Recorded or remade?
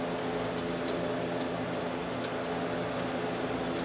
recorded